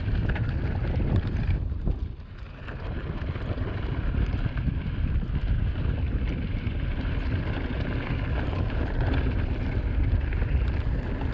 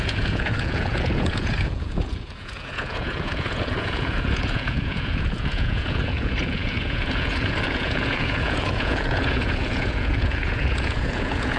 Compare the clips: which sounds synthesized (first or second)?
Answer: second